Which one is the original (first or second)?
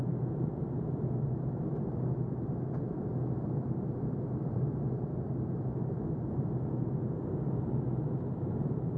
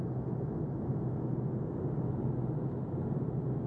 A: second